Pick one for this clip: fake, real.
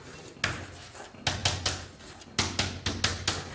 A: real